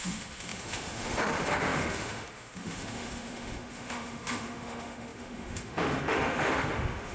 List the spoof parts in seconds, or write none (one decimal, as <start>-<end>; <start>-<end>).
0.0-7.1